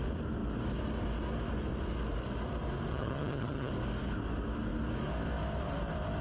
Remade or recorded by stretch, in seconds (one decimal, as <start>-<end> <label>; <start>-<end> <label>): 0.0-2.9 recorded; 2.9-3.7 remade; 3.7-6.2 recorded